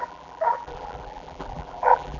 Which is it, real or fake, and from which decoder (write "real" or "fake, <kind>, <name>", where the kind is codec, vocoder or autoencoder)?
fake, vocoder, BigVGAN v2